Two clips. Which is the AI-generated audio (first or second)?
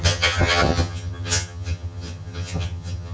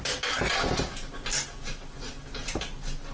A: first